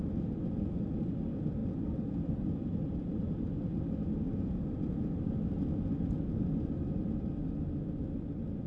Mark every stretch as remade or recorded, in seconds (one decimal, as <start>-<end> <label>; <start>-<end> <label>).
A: 0.0-1.6 recorded; 1.6-3.7 remade; 3.7-8.7 recorded